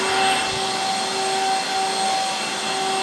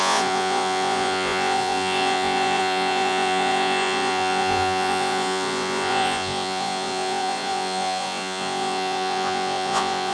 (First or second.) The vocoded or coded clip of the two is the second